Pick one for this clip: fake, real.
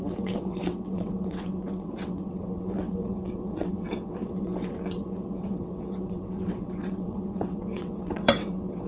fake